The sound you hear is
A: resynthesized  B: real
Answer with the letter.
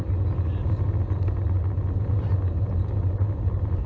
B